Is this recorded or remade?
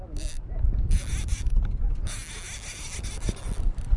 recorded